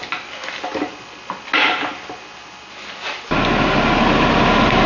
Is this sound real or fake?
real